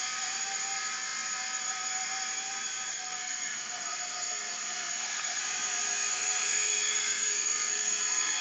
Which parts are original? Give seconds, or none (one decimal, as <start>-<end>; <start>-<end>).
0.0-2.9; 5.4-6.1